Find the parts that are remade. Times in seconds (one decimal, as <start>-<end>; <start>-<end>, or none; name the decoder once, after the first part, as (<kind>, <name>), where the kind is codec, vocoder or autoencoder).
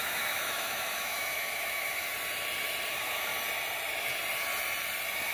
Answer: 0.0-2.1 (autoencoder, DAC-VAE); 2.9-3.3